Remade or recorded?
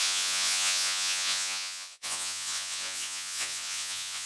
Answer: remade